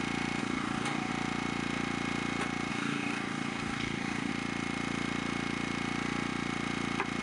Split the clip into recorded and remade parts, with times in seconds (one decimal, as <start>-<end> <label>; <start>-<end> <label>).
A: 0.0-0.4 recorded; 0.4-1.1 remade; 1.1-2.7 recorded; 2.7-4.3 remade; 4.3-7.2 recorded